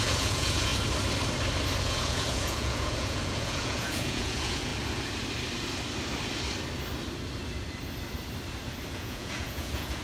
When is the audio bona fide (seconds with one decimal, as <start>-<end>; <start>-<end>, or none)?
0.7-1.8; 4.7-8.9